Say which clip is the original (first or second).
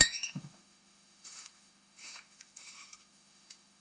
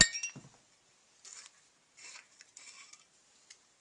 second